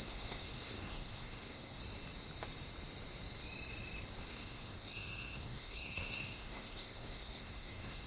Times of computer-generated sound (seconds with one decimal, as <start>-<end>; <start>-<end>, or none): 0.0-1.8; 4.3-8.1